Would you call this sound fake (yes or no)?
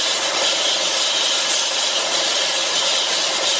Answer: no